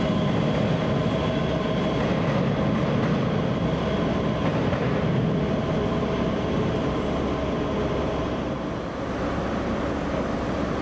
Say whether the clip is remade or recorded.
recorded